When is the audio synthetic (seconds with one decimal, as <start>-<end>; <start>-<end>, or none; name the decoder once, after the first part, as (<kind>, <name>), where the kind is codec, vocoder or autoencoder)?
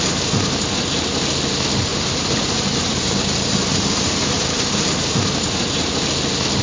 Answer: 1.9-5.9 (vocoder, BigVGAN v2)